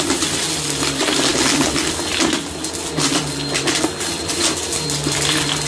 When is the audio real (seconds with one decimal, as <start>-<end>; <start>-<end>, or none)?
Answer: 0.0-5.7